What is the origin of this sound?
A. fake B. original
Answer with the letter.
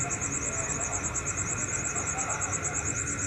B